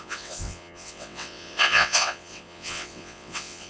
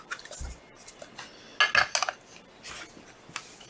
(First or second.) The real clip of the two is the second